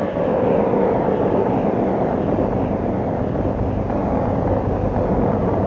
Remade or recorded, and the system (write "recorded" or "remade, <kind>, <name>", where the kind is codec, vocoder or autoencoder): recorded